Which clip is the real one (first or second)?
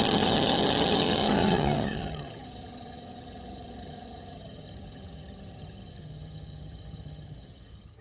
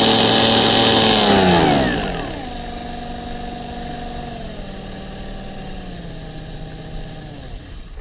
second